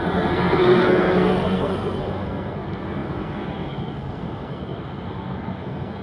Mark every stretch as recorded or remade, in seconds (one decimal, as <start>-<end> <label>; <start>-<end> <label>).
0.0-6.0 remade